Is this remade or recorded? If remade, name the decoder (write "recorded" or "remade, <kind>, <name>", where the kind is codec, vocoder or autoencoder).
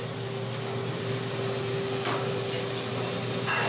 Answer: recorded